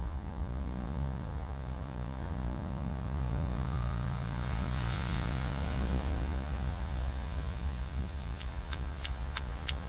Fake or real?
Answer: fake